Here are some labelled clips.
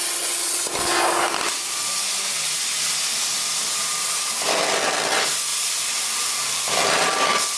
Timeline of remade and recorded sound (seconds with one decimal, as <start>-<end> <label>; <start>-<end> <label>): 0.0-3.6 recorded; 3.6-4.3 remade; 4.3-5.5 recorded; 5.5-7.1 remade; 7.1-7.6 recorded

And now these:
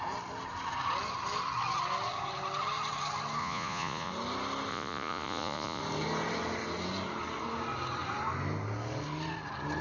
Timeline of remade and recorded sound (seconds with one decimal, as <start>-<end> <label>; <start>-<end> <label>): 0.0-3.4 recorded; 3.4-4.1 remade; 4.1-4.7 recorded; 4.7-5.8 remade; 5.8-9.8 recorded

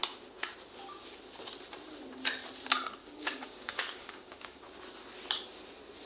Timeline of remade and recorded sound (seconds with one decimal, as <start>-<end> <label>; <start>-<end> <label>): 0.0-3.0 recorded; 3.0-4.6 remade; 4.6-6.1 recorded

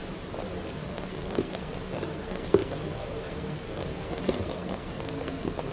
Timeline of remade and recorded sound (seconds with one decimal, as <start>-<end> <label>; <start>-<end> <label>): 0.0-0.7 recorded; 0.7-5.7 remade

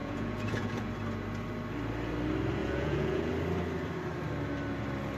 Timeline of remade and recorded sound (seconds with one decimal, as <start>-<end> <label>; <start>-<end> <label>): 0.0-0.9 remade; 0.9-2.6 recorded; 2.6-3.3 remade; 3.3-5.2 recorded

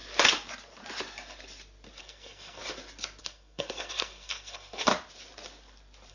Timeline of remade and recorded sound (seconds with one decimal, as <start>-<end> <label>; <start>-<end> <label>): 0.0-2.0 recorded; 2.0-2.6 remade; 2.6-3.2 recorded; 3.2-4.9 remade; 4.9-6.1 recorded